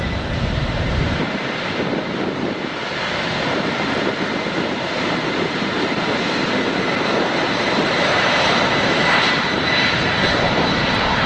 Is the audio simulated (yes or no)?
yes